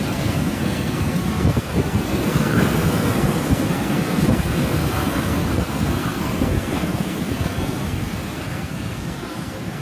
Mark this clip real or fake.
fake